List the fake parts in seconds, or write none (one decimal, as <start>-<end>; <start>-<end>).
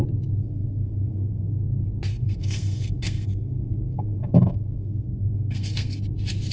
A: 0.4-1.5; 2.1-6.0